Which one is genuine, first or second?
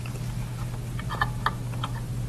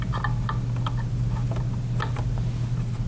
second